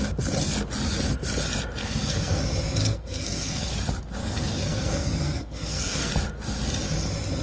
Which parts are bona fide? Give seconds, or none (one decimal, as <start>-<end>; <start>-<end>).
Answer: 0.0-1.8; 2.4-2.8; 3.7-4.2; 6.1-7.4